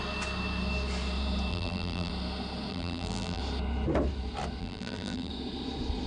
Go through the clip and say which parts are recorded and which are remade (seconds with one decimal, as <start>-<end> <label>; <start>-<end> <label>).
0.0-1.5 recorded; 1.5-2.1 remade; 2.1-2.7 recorded; 2.7-3.4 remade; 3.4-4.6 recorded; 4.6-5.3 remade; 5.3-6.1 recorded

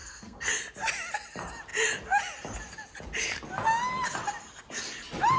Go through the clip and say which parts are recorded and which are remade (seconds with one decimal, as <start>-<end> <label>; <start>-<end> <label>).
0.0-0.5 remade; 0.5-5.4 recorded